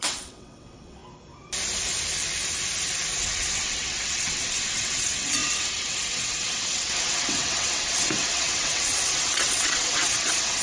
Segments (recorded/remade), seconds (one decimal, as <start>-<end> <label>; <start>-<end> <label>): 0.0-1.0 remade; 1.0-3.2 recorded; 3.2-10.6 remade